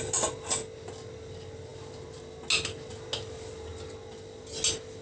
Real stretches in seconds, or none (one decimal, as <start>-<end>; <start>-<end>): 0.0-5.0